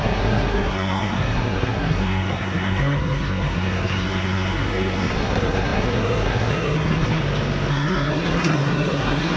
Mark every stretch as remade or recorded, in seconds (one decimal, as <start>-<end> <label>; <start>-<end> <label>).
0.0-7.2 remade; 7.2-7.7 recorded; 7.7-9.4 remade